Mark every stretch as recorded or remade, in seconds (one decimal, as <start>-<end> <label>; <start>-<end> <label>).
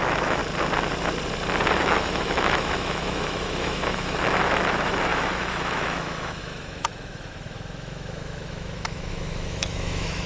0.0-0.4 remade; 0.4-1.8 recorded; 1.8-10.3 remade